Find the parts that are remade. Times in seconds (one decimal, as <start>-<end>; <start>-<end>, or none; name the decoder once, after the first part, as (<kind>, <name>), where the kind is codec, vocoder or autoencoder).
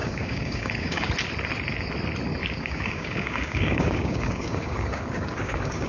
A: 0.0-1.1 (codec, DAC); 2.4-5.9